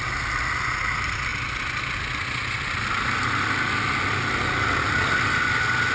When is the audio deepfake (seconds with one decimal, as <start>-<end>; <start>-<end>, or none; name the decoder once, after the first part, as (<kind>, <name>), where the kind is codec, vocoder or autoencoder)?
none